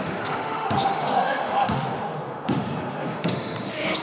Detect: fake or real fake